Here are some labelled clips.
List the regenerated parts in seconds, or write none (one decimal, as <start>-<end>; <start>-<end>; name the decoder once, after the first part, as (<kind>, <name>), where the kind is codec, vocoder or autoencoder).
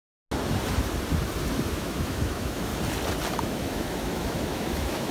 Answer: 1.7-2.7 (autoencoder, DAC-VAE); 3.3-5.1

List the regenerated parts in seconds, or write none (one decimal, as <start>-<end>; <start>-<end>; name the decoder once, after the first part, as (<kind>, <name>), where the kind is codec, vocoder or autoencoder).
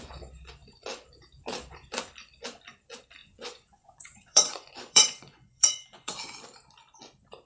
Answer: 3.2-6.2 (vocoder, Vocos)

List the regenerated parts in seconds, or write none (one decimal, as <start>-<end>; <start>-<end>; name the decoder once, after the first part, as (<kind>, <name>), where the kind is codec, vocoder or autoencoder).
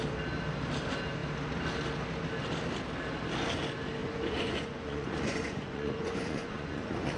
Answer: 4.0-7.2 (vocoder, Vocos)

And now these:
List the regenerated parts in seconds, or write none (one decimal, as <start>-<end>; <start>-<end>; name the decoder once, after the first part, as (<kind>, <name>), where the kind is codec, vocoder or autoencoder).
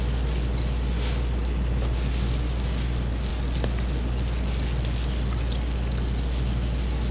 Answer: none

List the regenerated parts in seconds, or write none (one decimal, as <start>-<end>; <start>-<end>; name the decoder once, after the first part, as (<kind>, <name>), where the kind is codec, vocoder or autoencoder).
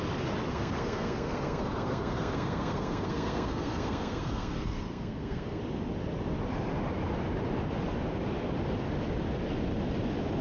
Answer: 0.5-5.6 (codec, SNAC)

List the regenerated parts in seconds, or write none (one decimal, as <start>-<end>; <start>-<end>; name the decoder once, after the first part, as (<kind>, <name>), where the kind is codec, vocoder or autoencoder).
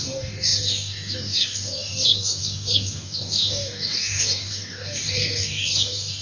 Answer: 0.0-6.2 (codec, DAC)